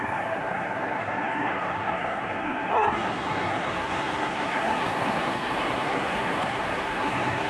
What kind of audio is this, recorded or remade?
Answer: remade